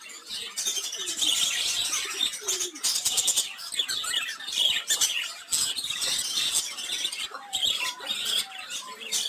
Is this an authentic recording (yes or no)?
yes